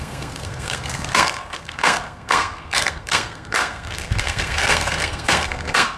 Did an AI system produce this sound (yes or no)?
yes